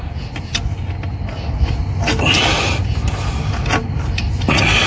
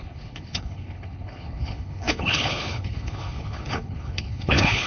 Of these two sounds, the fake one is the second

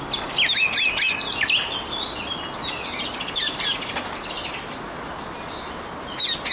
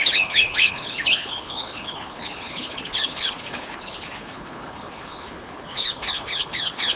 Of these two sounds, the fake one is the second